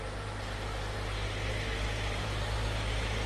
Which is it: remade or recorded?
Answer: recorded